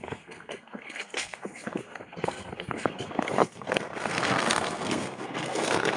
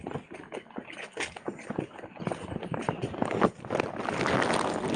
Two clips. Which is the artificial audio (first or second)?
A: first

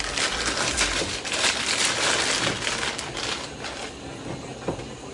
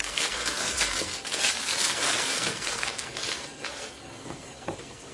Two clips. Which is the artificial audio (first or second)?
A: second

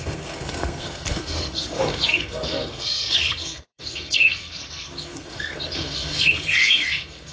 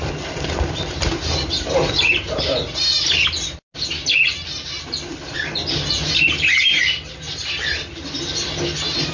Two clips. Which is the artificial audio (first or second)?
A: first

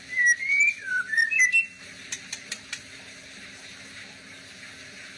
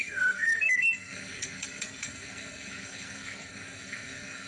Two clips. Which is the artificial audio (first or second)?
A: second